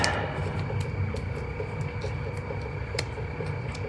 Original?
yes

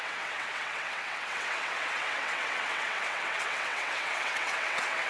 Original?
no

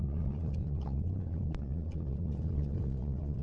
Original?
no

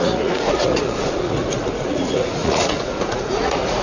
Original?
no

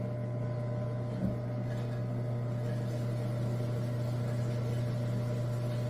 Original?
yes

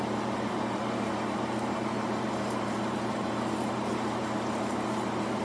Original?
no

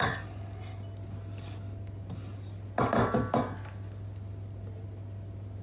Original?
yes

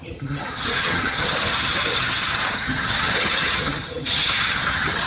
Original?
no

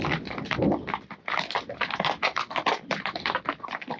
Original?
yes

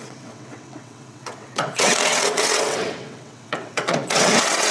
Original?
no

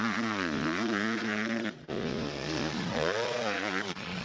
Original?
no